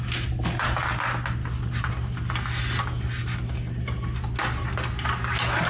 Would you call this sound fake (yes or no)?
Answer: no